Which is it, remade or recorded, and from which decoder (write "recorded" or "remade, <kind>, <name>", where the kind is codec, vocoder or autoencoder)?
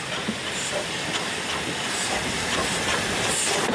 recorded